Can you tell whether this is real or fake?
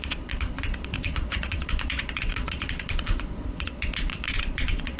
fake